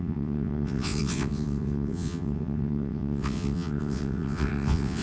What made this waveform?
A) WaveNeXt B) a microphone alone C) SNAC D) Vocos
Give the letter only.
A